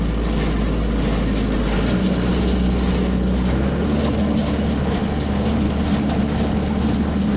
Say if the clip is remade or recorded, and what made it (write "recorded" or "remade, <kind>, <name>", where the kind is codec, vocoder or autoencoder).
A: recorded